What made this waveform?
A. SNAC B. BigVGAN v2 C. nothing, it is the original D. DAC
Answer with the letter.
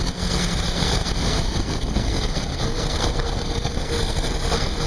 A